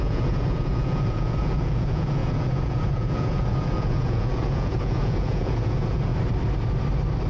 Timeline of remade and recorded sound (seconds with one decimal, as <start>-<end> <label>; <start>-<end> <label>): 0.0-6.1 remade; 6.1-7.3 recorded